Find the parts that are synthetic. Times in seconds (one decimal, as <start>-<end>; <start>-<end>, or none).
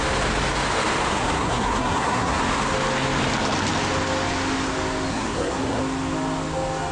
1.1-2.4; 5.1-5.8